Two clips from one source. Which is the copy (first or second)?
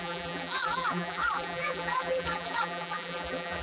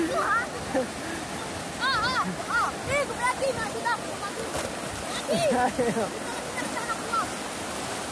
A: first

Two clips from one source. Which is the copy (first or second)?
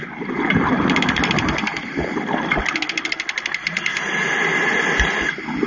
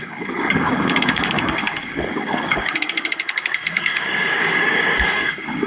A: second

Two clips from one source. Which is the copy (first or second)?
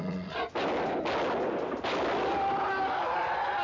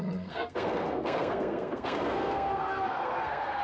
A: second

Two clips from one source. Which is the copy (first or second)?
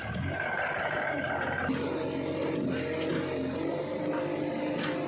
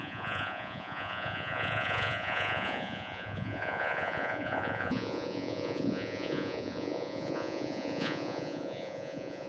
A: second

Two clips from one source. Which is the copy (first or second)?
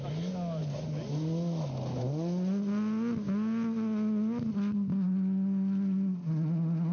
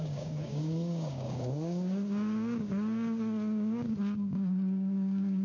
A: second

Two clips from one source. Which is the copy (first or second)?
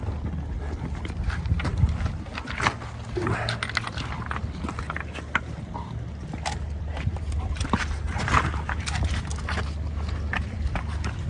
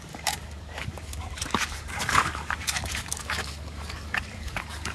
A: second